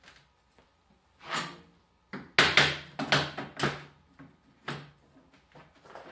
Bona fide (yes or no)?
yes